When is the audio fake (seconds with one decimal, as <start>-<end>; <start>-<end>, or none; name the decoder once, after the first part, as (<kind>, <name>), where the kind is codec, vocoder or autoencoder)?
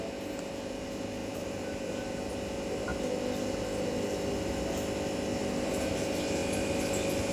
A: 1.2-2.3 (vocoder, BigVGAN v2); 5.4-6.0